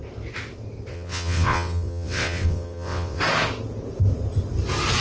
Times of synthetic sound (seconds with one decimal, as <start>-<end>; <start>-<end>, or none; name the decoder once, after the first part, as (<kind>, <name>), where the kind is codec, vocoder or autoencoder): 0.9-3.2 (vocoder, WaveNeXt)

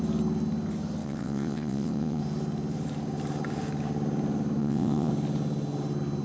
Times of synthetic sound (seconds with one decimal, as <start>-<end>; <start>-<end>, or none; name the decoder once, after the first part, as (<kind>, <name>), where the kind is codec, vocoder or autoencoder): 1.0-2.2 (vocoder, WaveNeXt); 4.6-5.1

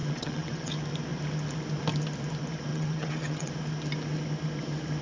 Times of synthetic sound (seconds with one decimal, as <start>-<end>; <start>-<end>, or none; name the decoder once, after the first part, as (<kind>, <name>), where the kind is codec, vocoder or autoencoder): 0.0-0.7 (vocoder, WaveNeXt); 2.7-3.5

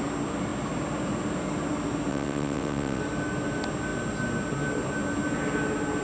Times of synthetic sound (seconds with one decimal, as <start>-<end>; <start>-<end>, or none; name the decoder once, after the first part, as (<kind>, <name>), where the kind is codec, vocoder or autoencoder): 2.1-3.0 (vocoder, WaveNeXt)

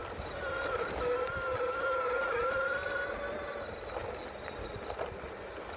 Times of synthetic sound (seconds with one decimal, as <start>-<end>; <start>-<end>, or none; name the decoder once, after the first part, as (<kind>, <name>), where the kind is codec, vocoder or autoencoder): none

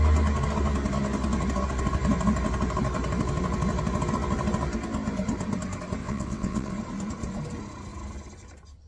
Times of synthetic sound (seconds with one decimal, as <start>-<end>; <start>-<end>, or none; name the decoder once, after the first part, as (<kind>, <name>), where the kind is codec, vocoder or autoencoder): 6.0-6.7 (vocoder, WaveNeXt)

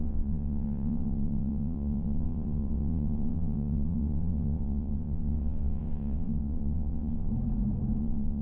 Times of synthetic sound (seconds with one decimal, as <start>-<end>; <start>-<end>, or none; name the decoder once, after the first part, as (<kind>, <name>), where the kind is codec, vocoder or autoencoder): 0.0-7.3 (vocoder, WaveNeXt); 8.0-8.4